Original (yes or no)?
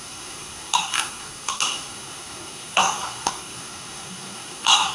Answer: no